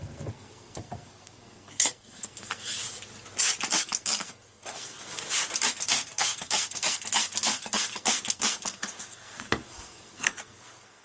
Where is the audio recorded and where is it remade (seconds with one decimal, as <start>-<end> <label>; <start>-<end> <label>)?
0.0-2.8 remade; 2.8-3.8 recorded; 3.8-5.2 remade; 5.2-5.7 recorded; 5.7-11.0 remade